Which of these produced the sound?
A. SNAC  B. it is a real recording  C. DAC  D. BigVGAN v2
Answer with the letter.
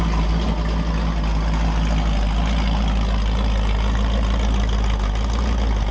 B